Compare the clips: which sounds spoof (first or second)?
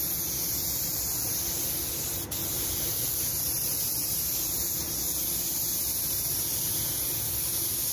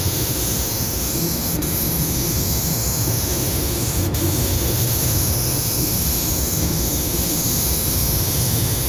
second